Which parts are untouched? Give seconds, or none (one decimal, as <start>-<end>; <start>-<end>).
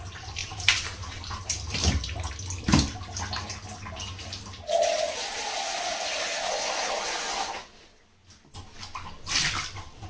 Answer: 0.0-0.4; 2.3-10.1